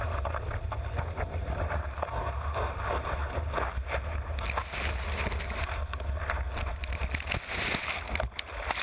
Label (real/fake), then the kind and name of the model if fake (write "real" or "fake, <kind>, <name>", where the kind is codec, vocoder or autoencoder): real